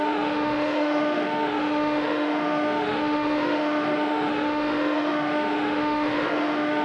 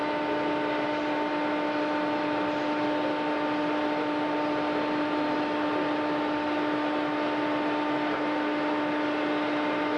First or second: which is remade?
first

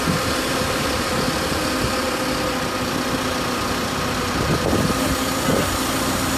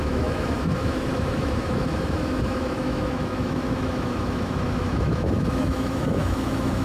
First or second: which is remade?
second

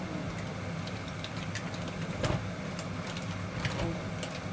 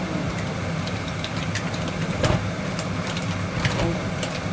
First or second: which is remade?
second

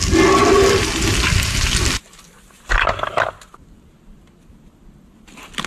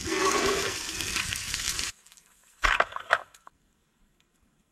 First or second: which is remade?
second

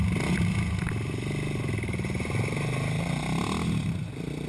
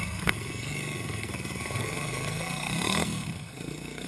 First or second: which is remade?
second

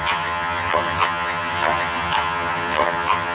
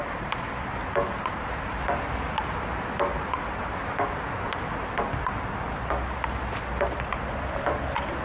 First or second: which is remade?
first